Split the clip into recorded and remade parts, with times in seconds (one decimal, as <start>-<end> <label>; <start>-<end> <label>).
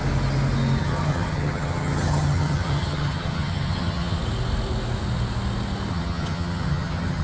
0.0-0.8 recorded; 0.8-4.2 remade; 4.2-5.9 recorded; 5.9-7.2 remade